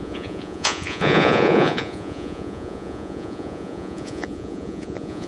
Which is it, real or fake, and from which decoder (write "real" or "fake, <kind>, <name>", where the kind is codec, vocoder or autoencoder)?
fake, vocoder, Vocos